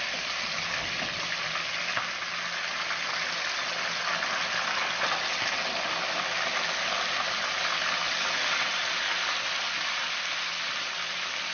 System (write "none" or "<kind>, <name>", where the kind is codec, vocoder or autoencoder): none